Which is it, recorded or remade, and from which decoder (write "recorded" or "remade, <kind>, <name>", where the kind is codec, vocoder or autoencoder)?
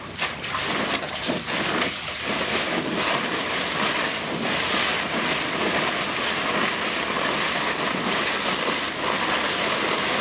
recorded